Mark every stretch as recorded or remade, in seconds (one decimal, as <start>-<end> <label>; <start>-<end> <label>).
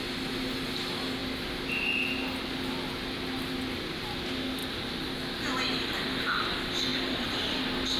0.0-8.0 recorded